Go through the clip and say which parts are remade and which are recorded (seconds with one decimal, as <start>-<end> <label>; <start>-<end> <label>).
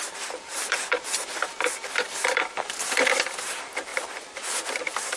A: 0.0-0.5 recorded; 0.5-3.3 remade; 3.3-5.2 recorded